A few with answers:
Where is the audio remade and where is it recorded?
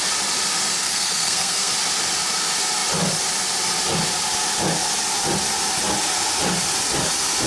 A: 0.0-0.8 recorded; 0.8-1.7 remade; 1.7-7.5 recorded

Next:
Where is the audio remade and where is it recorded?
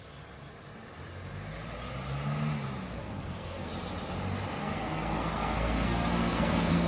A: 0.0-3.0 recorded; 3.0-3.7 remade; 3.7-4.6 recorded; 4.6-6.9 remade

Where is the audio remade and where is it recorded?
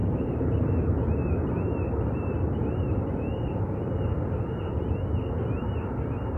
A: 0.0-0.6 remade; 0.6-6.4 recorded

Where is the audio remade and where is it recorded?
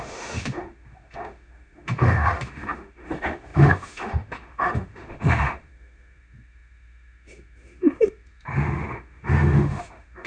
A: 0.0-10.3 remade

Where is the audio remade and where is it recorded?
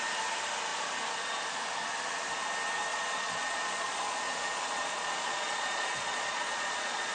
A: 0.0-2.9 recorded; 2.9-7.1 remade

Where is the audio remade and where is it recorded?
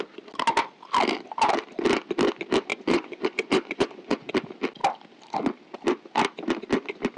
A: 0.0-2.7 recorded; 2.7-4.3 remade; 4.3-7.2 recorded